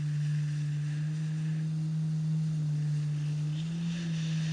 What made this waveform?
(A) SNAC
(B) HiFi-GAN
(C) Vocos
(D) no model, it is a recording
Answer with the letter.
D